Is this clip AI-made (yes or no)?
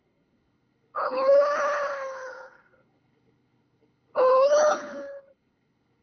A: yes